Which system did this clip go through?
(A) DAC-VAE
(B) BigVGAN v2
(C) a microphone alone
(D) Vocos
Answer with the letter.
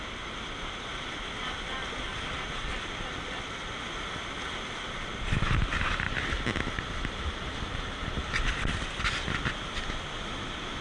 C